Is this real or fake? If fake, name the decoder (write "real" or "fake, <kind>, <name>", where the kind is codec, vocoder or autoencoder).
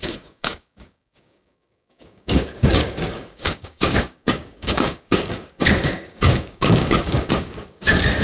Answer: fake, codec, DAC